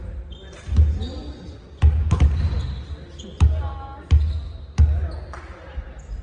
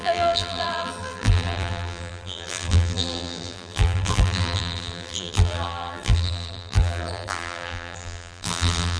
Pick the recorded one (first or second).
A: first